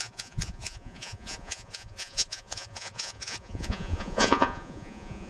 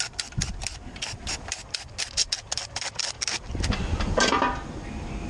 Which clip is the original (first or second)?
second